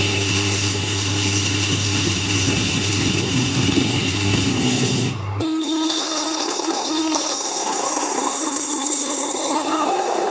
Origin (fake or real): fake